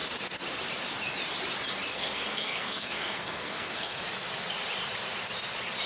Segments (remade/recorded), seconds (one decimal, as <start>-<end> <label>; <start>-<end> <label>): 0.0-1.9 recorded; 1.9-4.0 remade; 4.0-5.9 recorded